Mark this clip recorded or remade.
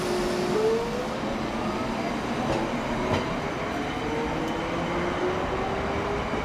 recorded